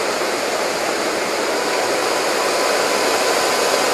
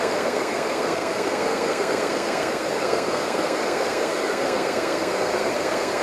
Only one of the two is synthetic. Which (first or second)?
second